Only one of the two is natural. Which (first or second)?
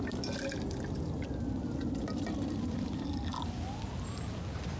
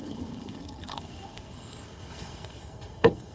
first